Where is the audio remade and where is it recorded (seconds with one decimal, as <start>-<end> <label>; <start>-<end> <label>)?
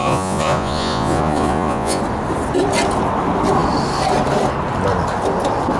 0.0-2.0 remade; 2.0-5.8 recorded